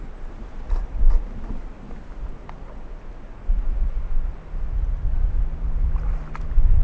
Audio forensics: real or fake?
real